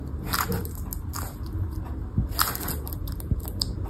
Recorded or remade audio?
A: recorded